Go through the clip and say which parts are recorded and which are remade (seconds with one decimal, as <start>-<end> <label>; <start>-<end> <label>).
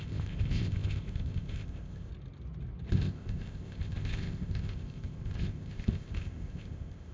0.0-2.1 remade; 2.1-2.9 recorded; 2.9-7.1 remade